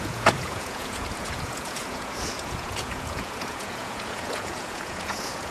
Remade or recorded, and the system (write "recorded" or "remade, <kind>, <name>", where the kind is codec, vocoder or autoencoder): remade, vocoder, Vocos